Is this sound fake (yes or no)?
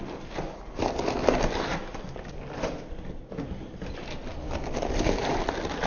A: no